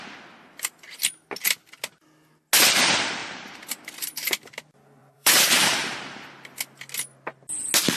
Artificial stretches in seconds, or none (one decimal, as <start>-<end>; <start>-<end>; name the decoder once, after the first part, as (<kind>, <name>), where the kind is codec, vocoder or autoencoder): 3.2-4.4 (vocoder, BigVGAN v2); 5.0-6.3